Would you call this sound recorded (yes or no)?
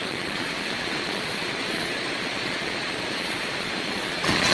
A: no